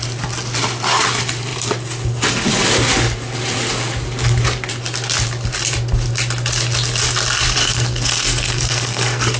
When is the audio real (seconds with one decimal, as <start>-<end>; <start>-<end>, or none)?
0.0-7.6

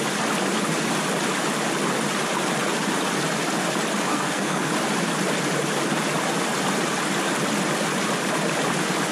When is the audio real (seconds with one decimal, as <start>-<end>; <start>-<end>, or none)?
0.0-4.1; 4.7-9.1

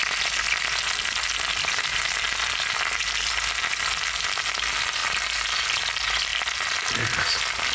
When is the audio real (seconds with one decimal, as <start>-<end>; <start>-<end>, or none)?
0.0-7.7

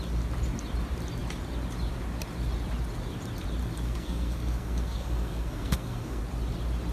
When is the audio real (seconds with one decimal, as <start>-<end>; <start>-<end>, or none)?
0.0-3.6; 6.2-6.9

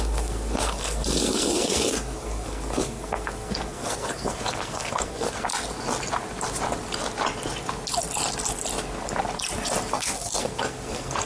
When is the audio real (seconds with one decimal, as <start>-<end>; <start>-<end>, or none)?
5.5-9.9

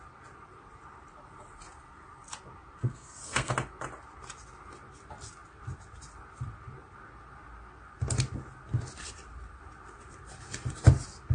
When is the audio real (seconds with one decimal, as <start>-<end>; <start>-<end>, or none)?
0.0-2.8; 3.5-11.3

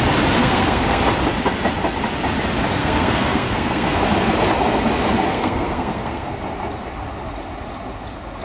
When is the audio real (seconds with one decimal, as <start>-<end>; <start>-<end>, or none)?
0.0-0.4; 1.0-2.8; 4.0-5.3; 6.3-8.4

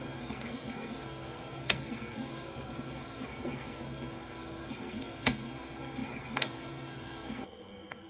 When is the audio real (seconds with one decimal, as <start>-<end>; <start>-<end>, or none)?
none